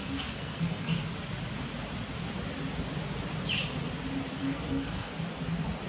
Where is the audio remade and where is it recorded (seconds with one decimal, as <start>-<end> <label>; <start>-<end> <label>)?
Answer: 0.0-1.0 remade; 1.0-4.4 recorded; 4.4-5.1 remade; 5.1-5.9 recorded